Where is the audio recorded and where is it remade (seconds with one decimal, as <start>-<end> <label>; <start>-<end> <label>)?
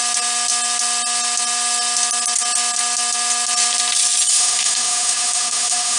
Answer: 0.0-4.3 recorded; 4.3-6.0 remade